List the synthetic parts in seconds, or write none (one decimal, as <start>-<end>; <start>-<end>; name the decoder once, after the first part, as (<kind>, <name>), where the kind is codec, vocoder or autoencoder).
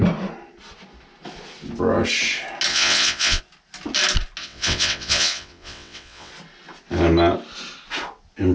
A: 2.7-3.4 (vocoder, WaveNeXt); 4.4-6.3